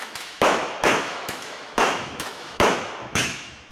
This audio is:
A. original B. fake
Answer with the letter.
B